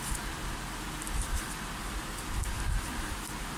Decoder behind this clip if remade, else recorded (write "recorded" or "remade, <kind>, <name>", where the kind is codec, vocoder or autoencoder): recorded